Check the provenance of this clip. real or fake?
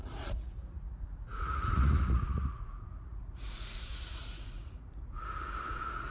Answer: fake